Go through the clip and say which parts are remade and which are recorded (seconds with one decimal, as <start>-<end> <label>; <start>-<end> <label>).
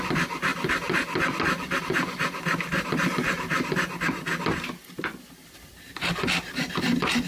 0.0-7.3 recorded